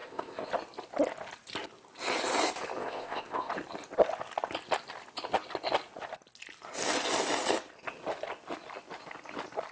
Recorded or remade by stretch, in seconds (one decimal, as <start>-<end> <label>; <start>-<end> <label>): 0.0-0.5 remade; 0.5-2.8 recorded; 2.8-3.5 remade; 3.5-9.7 recorded